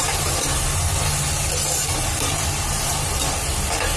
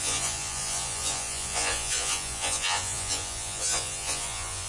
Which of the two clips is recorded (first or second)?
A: first